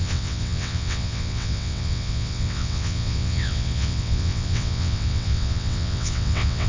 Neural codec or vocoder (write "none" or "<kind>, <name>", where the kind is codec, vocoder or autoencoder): vocoder, WaveNeXt